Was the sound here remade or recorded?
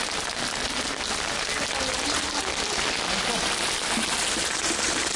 recorded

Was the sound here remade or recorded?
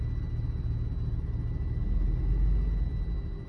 recorded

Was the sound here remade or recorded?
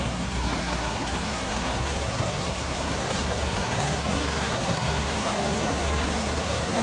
remade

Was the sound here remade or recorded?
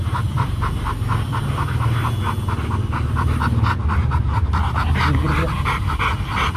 recorded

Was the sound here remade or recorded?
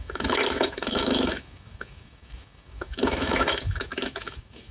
remade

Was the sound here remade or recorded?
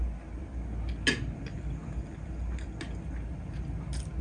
recorded